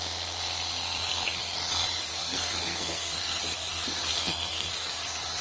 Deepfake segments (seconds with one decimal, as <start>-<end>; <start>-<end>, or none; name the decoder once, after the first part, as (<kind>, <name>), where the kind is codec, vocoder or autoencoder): 2.1-3.2 (codec, SNAC); 4.1-4.7